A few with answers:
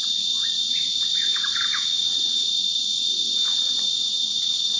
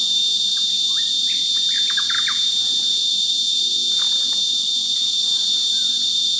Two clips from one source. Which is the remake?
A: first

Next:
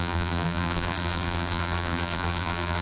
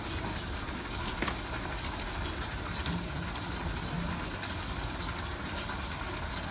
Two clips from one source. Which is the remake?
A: first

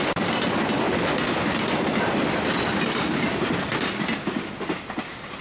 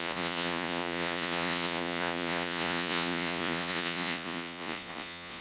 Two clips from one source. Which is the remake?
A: second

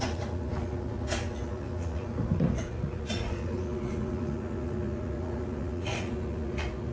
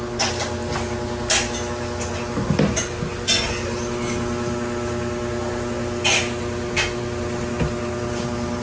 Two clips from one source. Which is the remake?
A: first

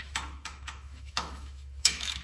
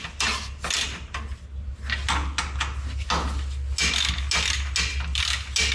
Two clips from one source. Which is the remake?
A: first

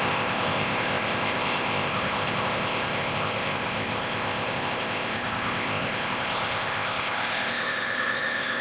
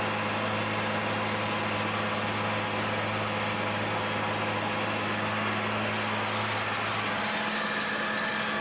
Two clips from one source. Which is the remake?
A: first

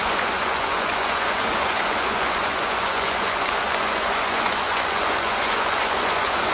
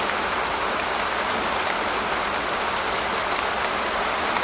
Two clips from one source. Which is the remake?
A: first